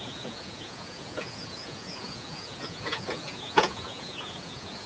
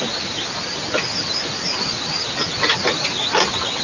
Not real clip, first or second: first